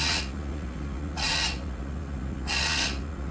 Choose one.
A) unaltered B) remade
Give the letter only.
B